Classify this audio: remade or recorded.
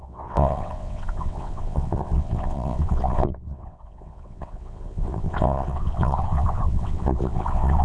remade